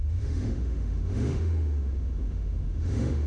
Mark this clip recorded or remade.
remade